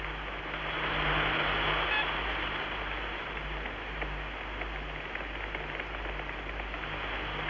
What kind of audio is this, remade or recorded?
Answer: recorded